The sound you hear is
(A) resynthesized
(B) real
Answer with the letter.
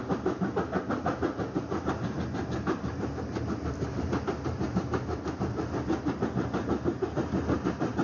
B